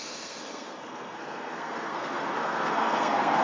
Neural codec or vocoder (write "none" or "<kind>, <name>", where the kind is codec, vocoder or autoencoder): codec, SNAC